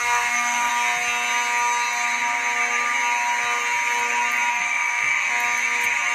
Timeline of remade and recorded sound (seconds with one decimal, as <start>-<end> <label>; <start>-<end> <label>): 0.0-0.7 remade; 0.7-4.5 recorded; 4.5-5.3 remade; 5.3-6.1 recorded